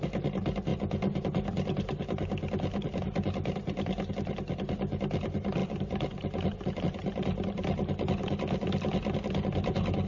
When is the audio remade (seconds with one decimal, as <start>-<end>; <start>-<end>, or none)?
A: none

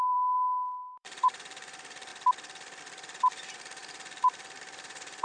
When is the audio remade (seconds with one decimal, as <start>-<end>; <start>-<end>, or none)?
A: 0.0-2.1; 2.8-5.2